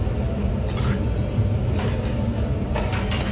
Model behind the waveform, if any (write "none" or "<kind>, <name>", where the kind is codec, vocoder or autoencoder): none